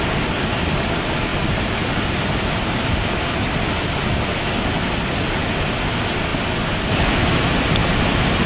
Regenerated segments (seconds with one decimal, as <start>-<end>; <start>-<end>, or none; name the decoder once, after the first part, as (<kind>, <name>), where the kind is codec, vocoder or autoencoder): none